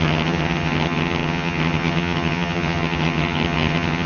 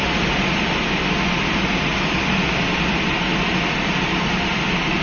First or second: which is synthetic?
first